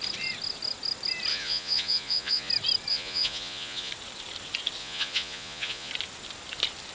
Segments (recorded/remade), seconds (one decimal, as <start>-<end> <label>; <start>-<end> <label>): 0.0-1.3 recorded; 1.3-2.5 remade; 2.5-2.9 recorded; 2.9-3.9 remade; 3.9-4.8 recorded; 4.8-5.9 remade; 5.9-6.9 recorded